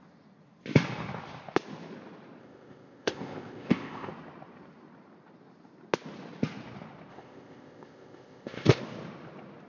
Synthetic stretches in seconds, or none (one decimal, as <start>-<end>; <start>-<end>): 2.4-4.1; 7.1-8.8